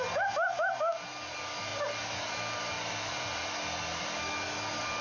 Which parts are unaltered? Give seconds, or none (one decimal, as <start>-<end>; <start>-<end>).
0.0-5.0